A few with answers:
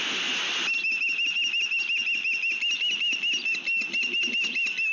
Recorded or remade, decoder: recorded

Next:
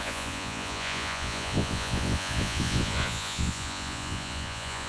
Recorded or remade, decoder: remade, vocoder, Vocos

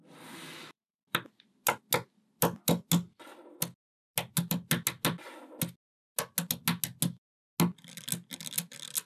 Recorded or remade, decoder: recorded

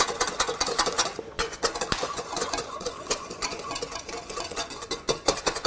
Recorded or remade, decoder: remade, vocoder, Vocos